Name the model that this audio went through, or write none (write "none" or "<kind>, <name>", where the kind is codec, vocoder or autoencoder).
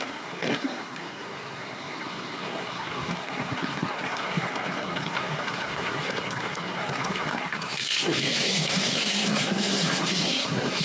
codec, SNAC